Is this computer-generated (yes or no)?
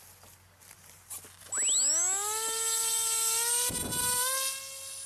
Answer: no